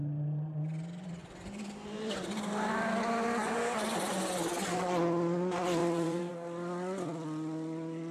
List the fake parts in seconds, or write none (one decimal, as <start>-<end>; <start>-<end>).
1.2-4.5; 5.8-6.3